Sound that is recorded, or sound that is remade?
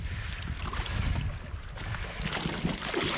recorded